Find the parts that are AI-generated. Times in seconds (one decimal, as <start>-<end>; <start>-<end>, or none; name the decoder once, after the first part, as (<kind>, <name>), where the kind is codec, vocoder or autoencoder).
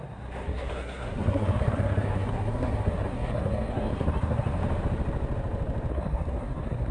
0.0-4.6 (codec, SNAC); 5.9-6.9